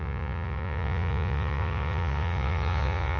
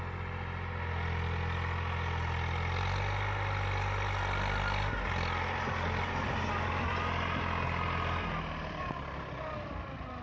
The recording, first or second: second